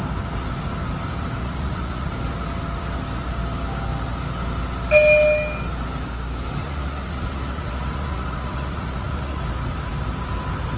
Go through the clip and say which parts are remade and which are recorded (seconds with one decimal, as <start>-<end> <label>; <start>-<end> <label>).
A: 0.0-1.4 recorded; 1.4-2.1 remade; 2.1-6.6 recorded; 6.6-9.4 remade; 9.4-10.8 recorded